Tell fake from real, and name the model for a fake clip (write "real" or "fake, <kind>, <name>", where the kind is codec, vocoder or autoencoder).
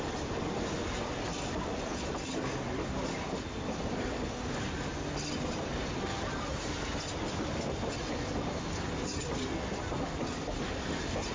real